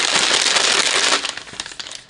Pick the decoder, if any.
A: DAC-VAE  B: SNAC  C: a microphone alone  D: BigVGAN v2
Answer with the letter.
C